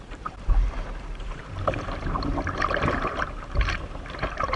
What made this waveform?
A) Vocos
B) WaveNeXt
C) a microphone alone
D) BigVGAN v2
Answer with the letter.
D